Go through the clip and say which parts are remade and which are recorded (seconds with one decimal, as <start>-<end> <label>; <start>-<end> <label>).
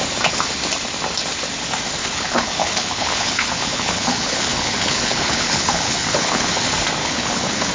0.0-2.0 recorded; 2.0-6.6 remade; 6.6-7.0 recorded; 7.0-7.7 remade